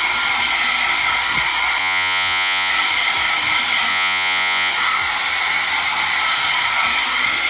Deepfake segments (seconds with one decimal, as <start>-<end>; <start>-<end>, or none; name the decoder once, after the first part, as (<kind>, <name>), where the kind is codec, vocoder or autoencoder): 1.8-2.7 (vocoder, Vocos); 3.9-4.7